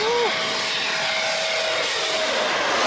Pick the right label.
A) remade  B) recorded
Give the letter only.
B